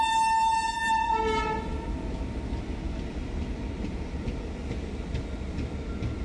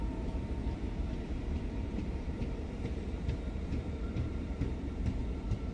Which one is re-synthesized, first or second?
second